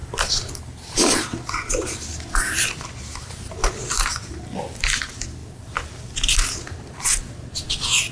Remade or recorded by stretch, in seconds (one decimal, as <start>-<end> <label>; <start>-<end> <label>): 0.0-8.1 recorded